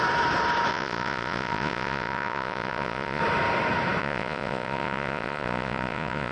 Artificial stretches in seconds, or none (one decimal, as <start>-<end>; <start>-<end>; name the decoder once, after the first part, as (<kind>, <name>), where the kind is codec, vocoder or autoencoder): 0.7-3.2 (vocoder, Vocos); 4.0-6.3